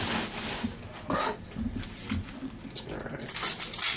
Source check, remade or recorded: recorded